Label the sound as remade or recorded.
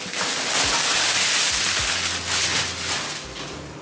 recorded